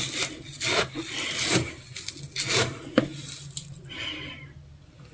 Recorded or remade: recorded